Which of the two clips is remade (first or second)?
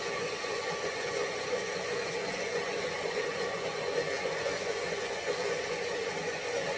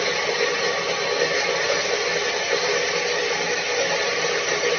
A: first